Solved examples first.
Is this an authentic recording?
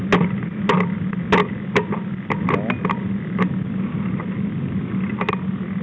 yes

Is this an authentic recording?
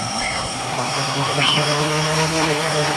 no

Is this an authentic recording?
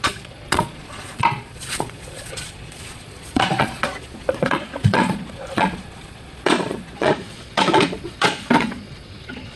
no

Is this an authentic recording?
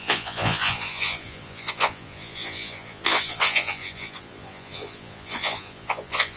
no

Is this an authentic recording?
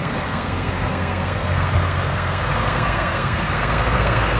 no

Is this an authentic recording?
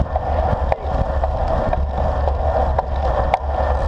yes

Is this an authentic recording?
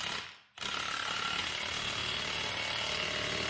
yes